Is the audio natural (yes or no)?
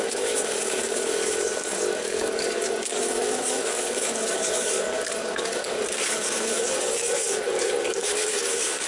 no